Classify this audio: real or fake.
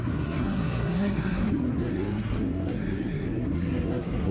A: fake